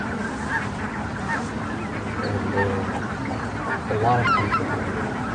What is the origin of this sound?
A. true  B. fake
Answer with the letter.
A